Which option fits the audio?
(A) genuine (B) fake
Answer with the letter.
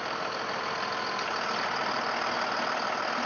A